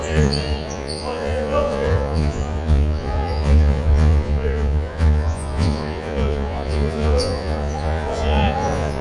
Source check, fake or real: fake